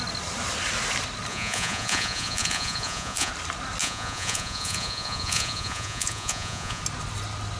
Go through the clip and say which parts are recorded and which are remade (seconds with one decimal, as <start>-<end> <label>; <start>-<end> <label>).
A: 0.0-1.3 recorded; 1.3-3.3 remade; 3.3-3.8 recorded; 3.8-6.8 remade; 6.8-7.6 recorded